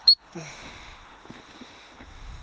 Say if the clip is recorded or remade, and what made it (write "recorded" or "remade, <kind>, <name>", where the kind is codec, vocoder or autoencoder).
remade, autoencoder, DAC-VAE